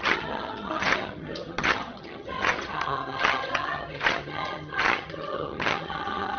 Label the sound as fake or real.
fake